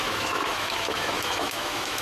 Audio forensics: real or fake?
fake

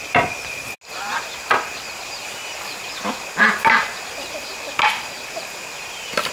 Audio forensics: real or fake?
real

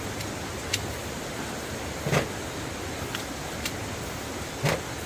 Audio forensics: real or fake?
real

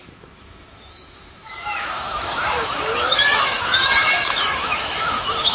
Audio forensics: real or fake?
fake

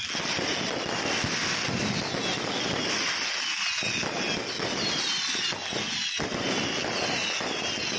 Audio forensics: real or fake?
real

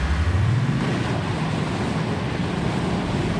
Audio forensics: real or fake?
real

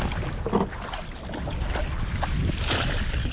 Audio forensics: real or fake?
real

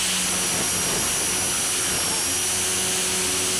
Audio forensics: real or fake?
real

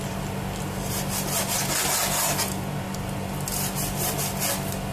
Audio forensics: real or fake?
real